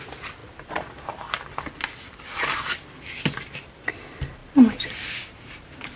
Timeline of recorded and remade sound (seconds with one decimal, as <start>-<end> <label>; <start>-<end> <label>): 0.0-6.0 recorded